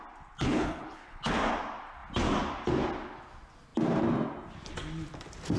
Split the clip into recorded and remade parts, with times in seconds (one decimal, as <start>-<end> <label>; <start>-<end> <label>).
0.0-0.4 recorded; 0.4-1.3 remade; 1.3-5.6 recorded